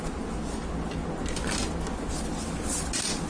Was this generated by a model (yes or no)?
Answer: no